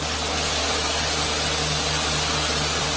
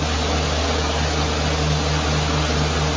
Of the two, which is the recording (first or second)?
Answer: second